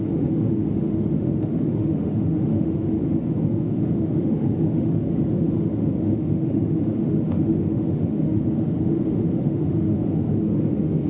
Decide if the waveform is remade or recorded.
remade